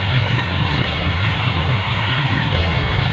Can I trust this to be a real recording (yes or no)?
no